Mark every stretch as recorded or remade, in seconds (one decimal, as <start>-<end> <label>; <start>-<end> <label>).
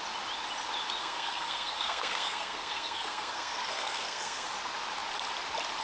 0.0-1.0 recorded; 1.0-4.5 remade; 4.5-5.8 recorded